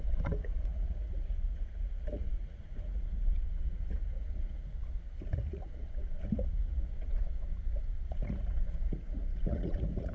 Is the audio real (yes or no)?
no